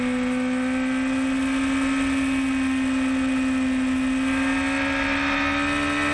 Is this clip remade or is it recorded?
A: recorded